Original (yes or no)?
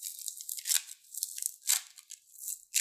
yes